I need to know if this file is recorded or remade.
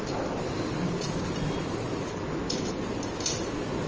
recorded